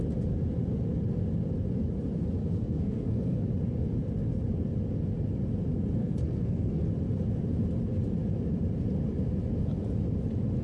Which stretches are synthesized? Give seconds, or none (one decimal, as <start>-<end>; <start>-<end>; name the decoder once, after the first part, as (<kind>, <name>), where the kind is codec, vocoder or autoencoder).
2.4-3.5 (codec, SNAC); 6.0-6.8